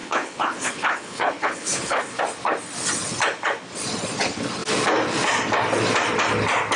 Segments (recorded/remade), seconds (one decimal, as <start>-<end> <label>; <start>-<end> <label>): 0.0-2.2 remade; 2.2-6.8 recorded